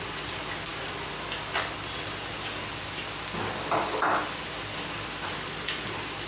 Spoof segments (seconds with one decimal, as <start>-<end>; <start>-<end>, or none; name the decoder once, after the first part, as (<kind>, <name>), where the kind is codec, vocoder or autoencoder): none